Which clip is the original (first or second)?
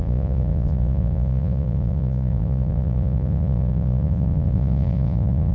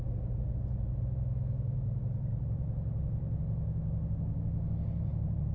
second